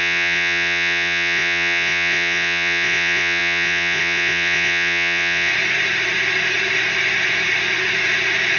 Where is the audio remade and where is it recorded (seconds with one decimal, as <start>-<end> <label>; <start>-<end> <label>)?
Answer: 0.0-5.5 remade; 5.5-8.6 recorded